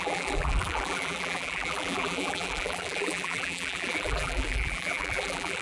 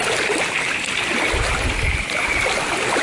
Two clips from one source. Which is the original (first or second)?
second